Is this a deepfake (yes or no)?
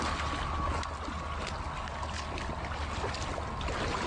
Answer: no